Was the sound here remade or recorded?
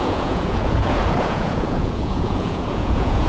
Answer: remade